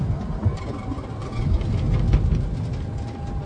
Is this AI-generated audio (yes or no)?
no